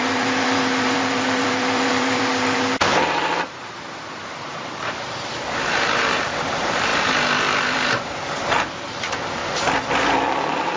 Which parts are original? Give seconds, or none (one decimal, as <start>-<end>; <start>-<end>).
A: 9.4-10.3